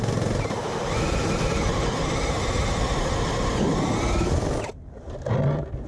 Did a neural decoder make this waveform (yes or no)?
no